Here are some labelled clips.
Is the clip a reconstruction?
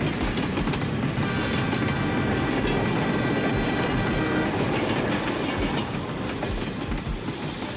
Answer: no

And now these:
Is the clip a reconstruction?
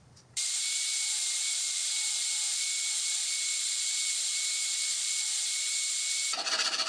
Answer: yes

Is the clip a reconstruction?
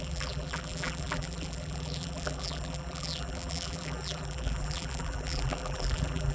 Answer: yes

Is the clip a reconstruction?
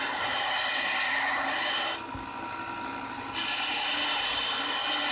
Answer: no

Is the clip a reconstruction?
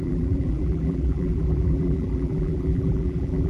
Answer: yes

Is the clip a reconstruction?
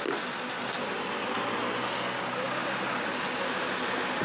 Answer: no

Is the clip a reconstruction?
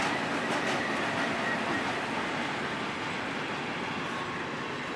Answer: no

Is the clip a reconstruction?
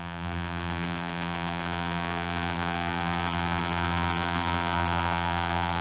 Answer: yes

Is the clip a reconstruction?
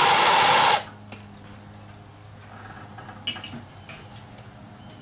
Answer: no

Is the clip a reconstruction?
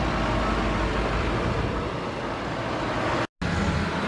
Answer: no